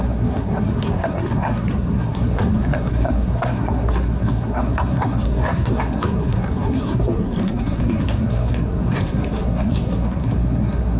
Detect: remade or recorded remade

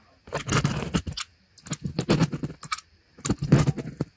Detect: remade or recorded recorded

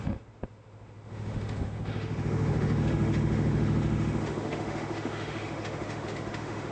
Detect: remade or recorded remade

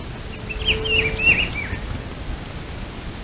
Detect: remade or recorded recorded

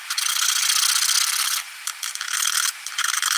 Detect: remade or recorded recorded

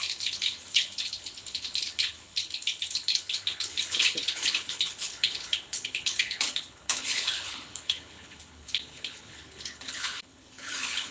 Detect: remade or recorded remade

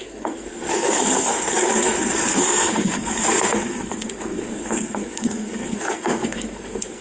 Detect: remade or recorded remade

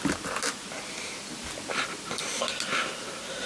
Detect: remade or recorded recorded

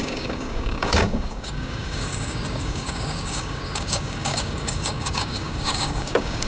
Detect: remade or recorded remade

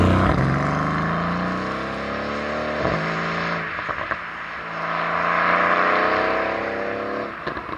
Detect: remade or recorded recorded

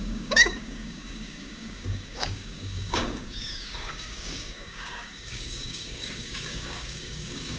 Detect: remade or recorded remade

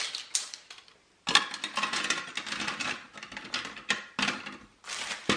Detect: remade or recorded recorded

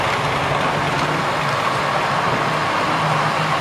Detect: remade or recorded recorded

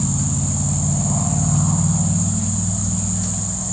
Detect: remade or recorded recorded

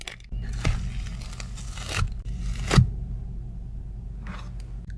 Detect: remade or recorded recorded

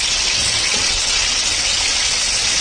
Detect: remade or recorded remade